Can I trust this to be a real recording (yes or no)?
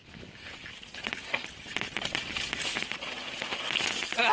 yes